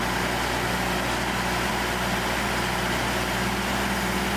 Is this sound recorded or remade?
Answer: recorded